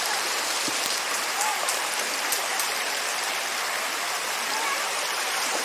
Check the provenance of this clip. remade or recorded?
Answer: remade